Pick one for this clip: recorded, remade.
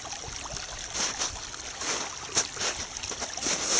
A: recorded